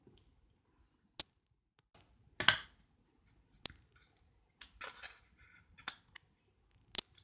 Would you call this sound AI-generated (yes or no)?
no